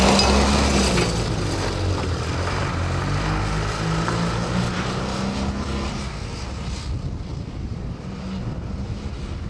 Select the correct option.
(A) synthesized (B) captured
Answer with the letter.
B